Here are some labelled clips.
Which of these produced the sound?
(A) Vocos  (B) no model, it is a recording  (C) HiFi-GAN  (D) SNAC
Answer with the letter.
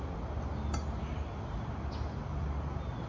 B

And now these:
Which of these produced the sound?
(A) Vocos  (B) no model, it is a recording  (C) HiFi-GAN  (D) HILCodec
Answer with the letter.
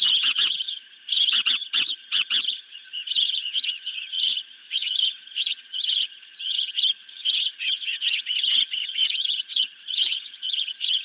C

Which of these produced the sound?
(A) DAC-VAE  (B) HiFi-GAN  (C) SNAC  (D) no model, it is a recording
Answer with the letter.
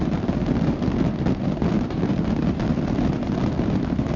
D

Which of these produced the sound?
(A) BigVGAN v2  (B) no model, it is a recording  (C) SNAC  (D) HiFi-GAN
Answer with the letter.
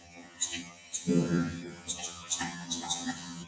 D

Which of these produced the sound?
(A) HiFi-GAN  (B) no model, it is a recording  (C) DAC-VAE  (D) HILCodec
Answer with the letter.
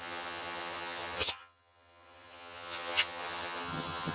A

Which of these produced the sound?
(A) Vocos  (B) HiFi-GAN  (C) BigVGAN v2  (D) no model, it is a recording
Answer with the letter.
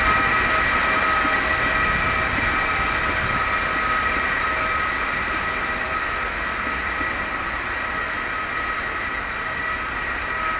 D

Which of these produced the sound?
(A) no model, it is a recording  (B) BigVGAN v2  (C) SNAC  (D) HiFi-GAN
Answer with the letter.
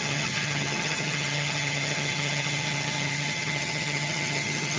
D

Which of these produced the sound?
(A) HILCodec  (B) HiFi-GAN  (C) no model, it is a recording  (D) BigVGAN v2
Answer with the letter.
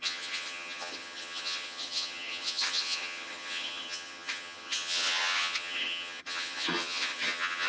B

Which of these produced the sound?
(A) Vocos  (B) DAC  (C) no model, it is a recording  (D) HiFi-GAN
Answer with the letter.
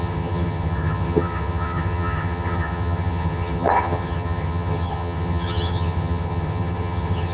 D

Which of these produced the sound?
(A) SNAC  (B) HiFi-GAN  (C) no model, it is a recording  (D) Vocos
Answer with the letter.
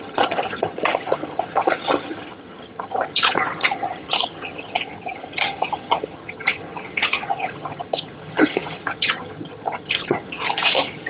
B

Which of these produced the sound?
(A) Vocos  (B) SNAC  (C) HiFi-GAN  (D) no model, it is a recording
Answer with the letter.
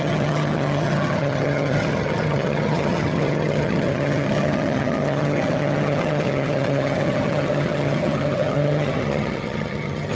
C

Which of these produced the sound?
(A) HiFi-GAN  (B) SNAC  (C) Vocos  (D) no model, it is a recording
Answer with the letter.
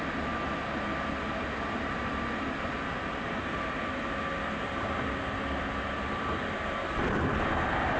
D